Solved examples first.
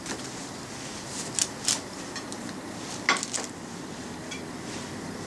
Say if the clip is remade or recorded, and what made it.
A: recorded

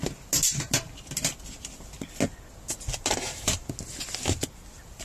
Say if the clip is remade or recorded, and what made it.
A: recorded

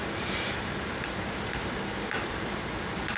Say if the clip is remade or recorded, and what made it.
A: remade, vocoder, BigVGAN v2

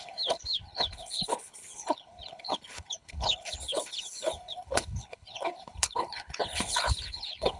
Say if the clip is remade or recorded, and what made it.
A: remade, codec, HILCodec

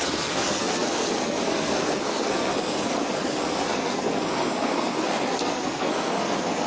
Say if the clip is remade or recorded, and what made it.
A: remade, codec, SNAC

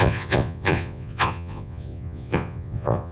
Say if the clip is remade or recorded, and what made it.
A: remade, vocoder, Vocos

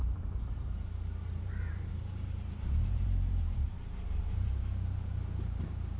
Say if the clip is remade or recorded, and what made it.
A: remade, vocoder, BigVGAN v2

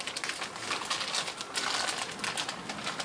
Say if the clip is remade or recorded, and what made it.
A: recorded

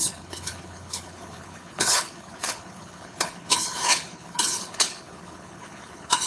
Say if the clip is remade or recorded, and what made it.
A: remade, codec, HILCodec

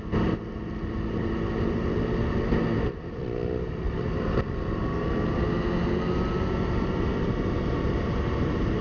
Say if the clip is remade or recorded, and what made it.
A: recorded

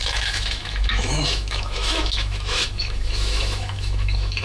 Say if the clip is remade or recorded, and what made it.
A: remade, autoencoder, DAC-VAE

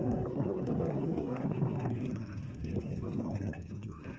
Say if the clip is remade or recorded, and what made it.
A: remade, codec, SNAC